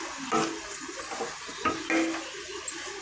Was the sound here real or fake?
real